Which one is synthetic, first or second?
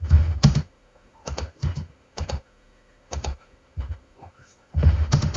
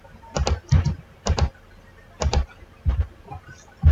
first